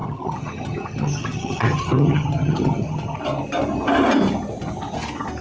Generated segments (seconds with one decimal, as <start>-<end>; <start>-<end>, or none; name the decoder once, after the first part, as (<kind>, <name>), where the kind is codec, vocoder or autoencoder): 0.0-3.2 (vocoder, HiFi-GAN)